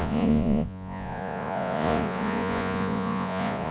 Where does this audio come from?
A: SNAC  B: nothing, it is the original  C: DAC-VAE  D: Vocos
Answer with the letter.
D